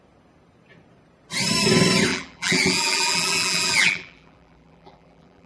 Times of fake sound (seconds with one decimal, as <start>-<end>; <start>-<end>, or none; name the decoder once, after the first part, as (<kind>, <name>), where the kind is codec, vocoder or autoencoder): 2.1-5.5 (vocoder, BigVGAN v2)